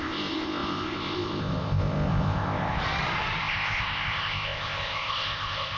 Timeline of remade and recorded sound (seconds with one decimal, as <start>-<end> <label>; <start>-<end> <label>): 0.0-2.8 remade; 2.8-3.4 recorded; 3.4-5.8 remade